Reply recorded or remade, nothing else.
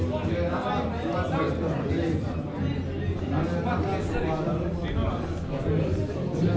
recorded